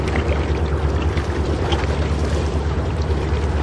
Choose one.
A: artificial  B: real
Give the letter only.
A